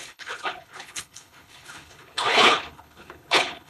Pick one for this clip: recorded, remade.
remade